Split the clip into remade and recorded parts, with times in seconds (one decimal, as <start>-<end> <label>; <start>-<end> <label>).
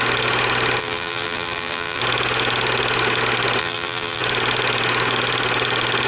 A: 0.0-0.8 recorded; 0.8-2.0 remade; 2.0-3.6 recorded; 3.6-4.2 remade; 4.2-6.1 recorded